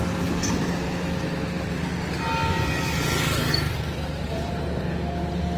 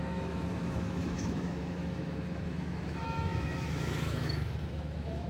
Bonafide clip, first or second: first